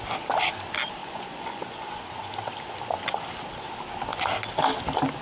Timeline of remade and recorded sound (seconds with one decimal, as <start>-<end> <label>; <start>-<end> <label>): 0.0-1.0 recorded; 1.0-2.1 remade; 2.1-5.2 recorded